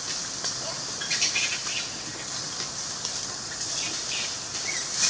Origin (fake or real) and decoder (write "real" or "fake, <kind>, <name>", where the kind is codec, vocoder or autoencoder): real